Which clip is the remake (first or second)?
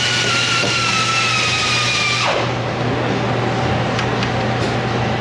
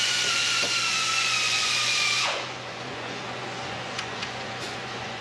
second